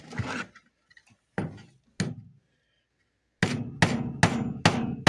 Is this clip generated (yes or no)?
no